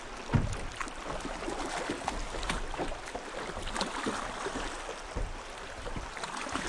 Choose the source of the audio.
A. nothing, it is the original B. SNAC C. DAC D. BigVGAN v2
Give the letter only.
D